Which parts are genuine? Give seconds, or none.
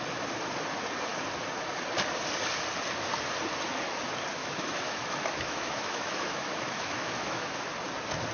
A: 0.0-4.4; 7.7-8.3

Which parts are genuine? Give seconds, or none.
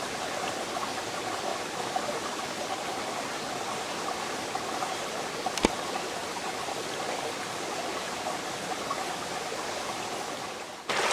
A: 0.0-6.2; 6.7-11.1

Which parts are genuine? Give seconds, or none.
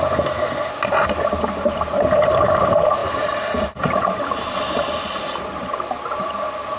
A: 0.0-6.8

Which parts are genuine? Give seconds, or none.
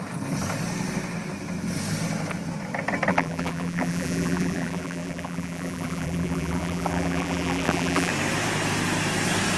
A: 0.0-3.1; 8.1-9.6